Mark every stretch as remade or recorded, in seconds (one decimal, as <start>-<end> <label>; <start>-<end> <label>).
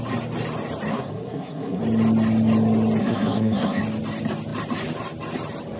0.0-0.9 recorded; 0.9-1.8 remade; 1.8-3.0 recorded; 3.0-3.8 remade; 3.8-5.8 recorded